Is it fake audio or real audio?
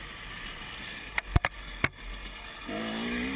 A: real